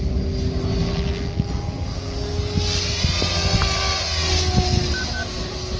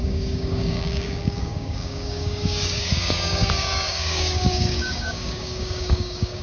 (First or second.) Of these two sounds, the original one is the first